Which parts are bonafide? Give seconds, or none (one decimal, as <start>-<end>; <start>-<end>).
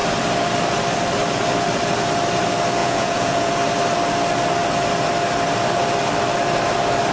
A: 0.0-2.8; 3.5-7.1